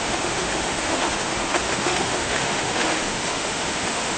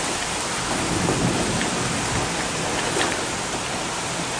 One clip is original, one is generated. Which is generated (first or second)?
first